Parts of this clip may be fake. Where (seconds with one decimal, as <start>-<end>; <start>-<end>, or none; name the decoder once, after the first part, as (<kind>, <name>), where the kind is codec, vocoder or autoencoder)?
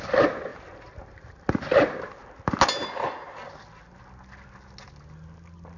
none